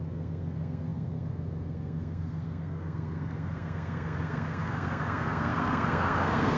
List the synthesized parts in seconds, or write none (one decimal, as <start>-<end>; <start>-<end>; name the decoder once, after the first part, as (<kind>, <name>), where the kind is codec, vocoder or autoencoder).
0.0-6.6 (codec, SNAC)